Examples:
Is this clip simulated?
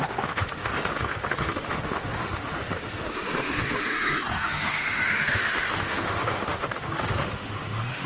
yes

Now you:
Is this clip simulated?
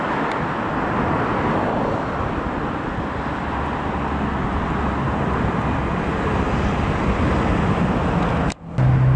no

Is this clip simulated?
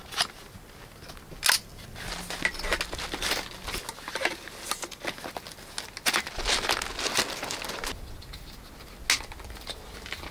no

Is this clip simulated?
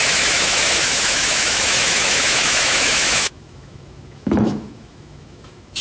yes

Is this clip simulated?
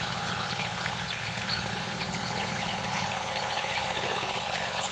yes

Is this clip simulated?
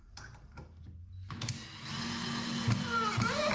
no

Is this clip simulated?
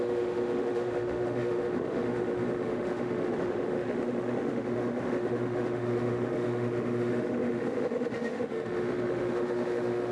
yes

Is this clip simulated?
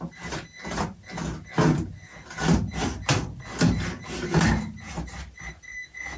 no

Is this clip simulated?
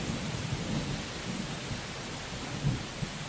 no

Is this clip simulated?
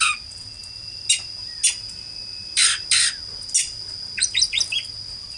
no